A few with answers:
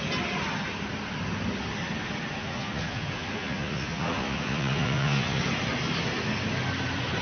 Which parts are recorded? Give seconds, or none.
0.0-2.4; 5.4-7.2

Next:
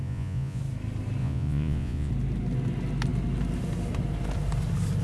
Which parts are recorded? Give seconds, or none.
0.6-1.2; 2.1-5.0

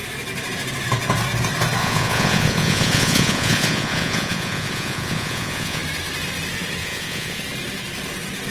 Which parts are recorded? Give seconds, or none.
0.0-1.8; 5.8-6.8; 7.4-8.5

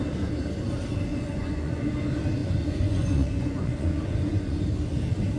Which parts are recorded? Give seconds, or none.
0.0-1.1; 1.9-2.4; 4.6-5.4

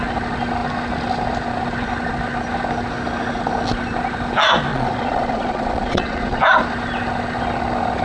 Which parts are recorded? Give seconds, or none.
0.0-4.7; 6.4-8.0

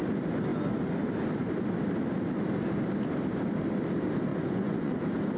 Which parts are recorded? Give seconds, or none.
0.0-4.3; 4.9-5.4

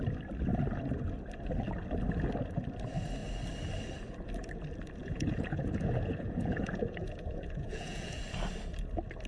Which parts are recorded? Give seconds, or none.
0.0-5.0; 8.2-9.3